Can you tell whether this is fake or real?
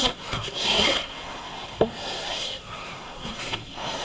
fake